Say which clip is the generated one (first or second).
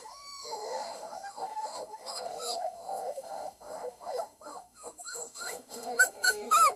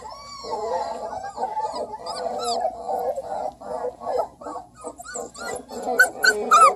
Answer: first